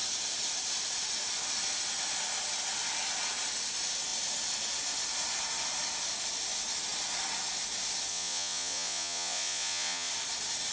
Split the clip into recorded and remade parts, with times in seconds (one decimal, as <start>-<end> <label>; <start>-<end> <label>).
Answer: 0.0-8.1 recorded; 8.1-10.1 remade; 10.1-10.7 recorded